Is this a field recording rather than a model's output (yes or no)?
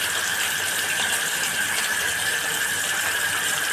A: no